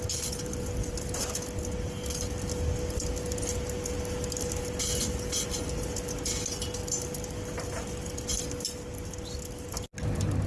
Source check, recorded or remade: recorded